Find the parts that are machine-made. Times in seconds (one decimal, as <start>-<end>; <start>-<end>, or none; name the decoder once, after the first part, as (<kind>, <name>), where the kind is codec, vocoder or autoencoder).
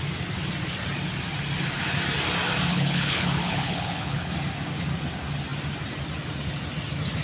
2.7-4.3 (codec, HILCodec)